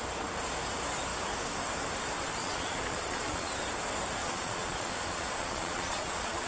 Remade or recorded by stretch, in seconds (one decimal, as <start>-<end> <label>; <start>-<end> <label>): 0.0-2.4 recorded; 2.4-3.5 remade; 3.5-4.2 recorded; 4.2-6.5 remade